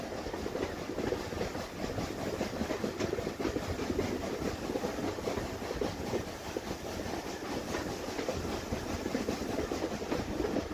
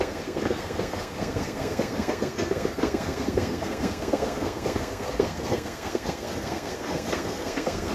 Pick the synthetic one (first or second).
second